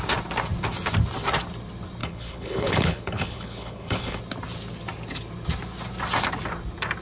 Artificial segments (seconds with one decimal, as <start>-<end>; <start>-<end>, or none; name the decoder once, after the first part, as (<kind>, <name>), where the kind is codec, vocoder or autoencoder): 2.0-4.2 (codec, HILCodec)